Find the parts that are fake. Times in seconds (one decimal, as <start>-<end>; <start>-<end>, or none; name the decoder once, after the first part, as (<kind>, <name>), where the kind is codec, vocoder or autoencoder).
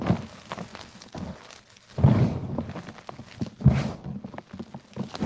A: none